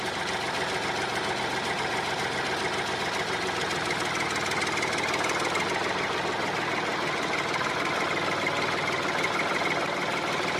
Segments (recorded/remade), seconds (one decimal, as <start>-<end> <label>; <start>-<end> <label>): 0.0-10.6 recorded